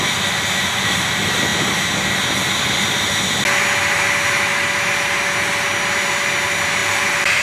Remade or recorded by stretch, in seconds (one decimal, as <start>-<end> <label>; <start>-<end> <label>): 0.0-6.8 recorded; 6.8-7.4 remade